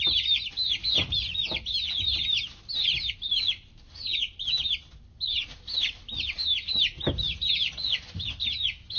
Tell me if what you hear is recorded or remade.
recorded